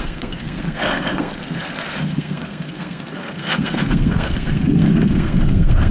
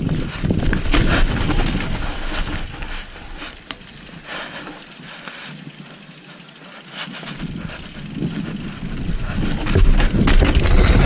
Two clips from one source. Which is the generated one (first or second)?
first